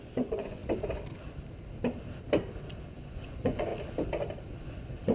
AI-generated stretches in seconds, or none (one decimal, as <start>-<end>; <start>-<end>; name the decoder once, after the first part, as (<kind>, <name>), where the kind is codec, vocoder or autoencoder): 0.0-0.6 (vocoder, Vocos); 2.9-3.7; 4.6-5.1

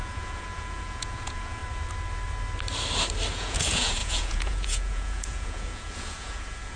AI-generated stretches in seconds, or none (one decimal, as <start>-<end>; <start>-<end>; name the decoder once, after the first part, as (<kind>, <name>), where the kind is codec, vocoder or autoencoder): 0.0-1.6 (vocoder, Vocos); 3.3-6.8

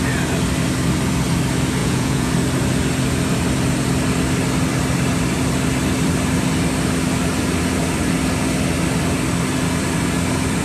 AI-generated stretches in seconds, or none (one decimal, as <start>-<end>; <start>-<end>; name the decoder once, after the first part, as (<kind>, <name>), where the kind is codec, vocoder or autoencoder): 1.8-2.3 (vocoder, Vocos)

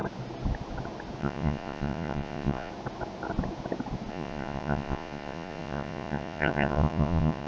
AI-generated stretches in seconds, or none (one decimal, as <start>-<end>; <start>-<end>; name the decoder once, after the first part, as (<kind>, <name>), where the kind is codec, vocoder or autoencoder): 1.2-2.7 (vocoder, Vocos); 4.1-7.5

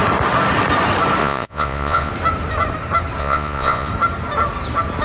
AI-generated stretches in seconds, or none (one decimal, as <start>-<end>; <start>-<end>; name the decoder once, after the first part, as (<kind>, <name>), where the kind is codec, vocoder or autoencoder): 1.2-2.1 (vocoder, Vocos); 3.2-3.9

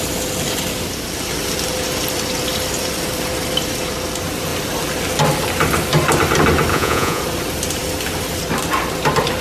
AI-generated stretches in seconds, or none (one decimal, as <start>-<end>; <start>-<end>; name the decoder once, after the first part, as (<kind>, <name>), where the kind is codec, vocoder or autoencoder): 6.7-7.2 (vocoder, Vocos)

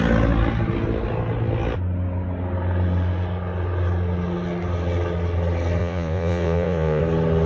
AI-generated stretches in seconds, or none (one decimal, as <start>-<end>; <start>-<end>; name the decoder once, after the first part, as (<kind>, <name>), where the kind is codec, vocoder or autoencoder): 5.8-7.0 (vocoder, Vocos)